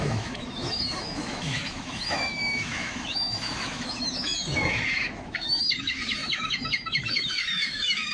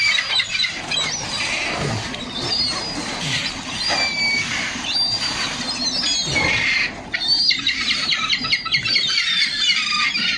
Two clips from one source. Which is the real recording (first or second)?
second